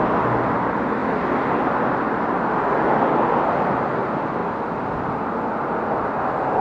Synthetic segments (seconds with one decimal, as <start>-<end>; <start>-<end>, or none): none